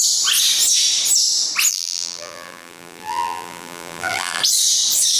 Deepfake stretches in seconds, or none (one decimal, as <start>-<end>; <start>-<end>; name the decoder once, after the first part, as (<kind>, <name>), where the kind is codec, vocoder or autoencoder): 1.7-4.4 (vocoder, BigVGAN v2)